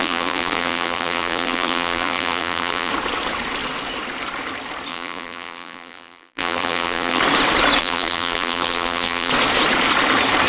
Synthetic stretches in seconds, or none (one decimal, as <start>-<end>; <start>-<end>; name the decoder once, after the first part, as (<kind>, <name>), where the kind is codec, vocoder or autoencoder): 0.0-2.9 (vocoder, BigVGAN v2); 4.9-7.2; 7.8-9.3